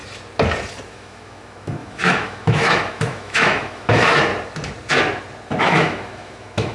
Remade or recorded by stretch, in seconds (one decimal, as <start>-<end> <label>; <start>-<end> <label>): 0.0-0.9 recorded; 0.9-4.3 remade; 4.3-5.6 recorded; 5.6-6.7 remade